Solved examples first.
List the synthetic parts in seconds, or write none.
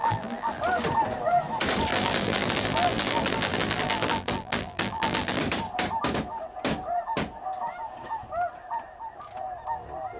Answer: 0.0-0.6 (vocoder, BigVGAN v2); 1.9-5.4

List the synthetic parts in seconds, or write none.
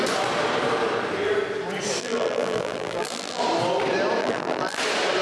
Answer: 2.0-3.4 (vocoder, BigVGAN v2); 4.2-4.8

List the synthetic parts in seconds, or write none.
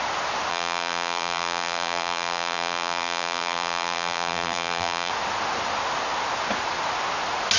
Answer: 0.5-5.1 (vocoder, BigVGAN v2)